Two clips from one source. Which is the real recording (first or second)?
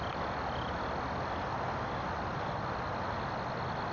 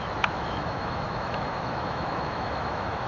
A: first